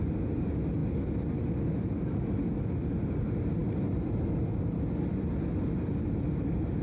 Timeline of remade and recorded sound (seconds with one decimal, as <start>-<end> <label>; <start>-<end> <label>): 0.0-6.8 recorded